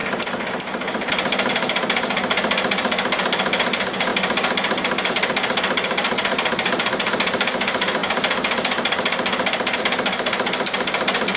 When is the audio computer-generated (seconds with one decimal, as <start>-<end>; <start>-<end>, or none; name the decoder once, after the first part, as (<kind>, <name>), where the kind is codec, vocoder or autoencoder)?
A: none